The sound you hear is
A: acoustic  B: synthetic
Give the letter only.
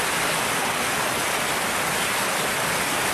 A